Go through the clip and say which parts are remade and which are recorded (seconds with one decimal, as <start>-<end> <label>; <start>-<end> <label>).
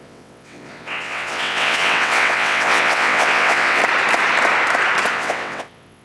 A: 0.0-3.8 remade; 3.8-5.1 recorded; 5.1-6.0 remade